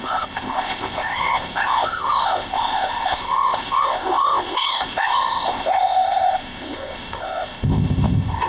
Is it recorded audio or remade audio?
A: remade